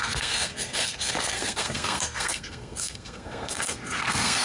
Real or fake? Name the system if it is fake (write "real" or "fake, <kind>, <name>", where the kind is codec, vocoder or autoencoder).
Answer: fake, codec, SNAC